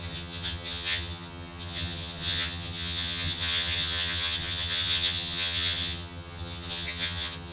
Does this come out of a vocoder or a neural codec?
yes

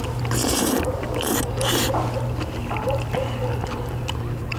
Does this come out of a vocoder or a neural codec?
no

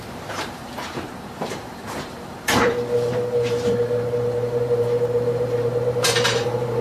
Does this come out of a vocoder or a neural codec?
yes